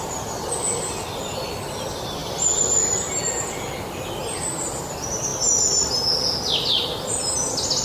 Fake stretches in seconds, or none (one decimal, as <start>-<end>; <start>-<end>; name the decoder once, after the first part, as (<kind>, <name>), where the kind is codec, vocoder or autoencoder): 2.2-3.2 (vocoder, BigVGAN v2)